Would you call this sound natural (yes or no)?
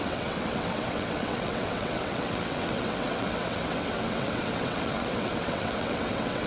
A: no